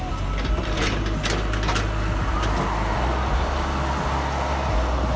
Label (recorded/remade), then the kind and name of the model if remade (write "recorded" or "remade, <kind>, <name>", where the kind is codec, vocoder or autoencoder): recorded